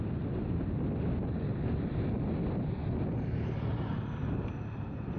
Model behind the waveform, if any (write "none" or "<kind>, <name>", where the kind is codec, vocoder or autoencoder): none